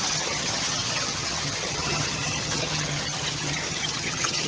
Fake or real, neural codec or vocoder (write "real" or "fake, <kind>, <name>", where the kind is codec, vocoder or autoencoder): fake, vocoder, HiFi-GAN